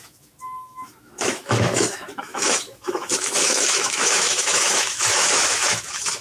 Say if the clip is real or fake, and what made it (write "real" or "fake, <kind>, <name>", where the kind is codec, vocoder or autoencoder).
fake, autoencoder, DAC-VAE